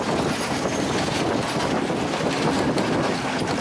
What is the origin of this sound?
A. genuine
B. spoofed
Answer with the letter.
A